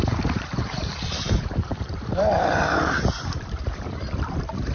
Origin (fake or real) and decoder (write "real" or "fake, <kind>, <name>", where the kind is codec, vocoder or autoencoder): fake, vocoder, BigVGAN v2